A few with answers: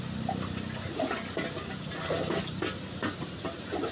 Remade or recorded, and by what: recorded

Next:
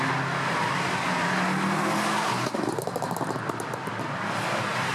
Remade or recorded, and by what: recorded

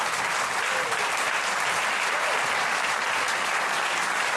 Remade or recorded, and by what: recorded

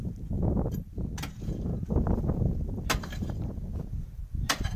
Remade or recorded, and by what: recorded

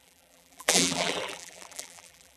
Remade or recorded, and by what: remade, vocoder, BigVGAN v2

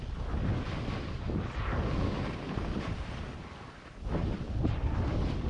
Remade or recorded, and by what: recorded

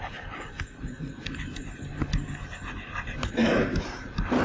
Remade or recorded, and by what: recorded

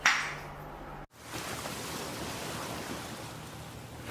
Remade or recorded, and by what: recorded